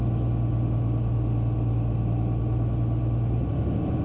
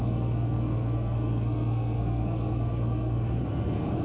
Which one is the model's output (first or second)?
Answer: second